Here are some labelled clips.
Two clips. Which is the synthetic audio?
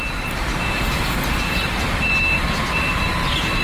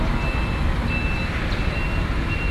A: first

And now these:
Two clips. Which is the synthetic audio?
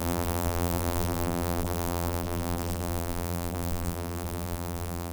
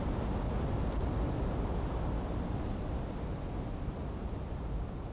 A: first